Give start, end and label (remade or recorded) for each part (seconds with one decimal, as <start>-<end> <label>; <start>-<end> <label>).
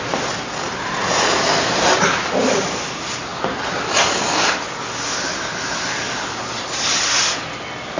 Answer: 0.0-1.0 recorded; 1.0-2.3 remade; 2.3-8.0 recorded